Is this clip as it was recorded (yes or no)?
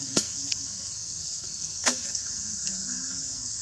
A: no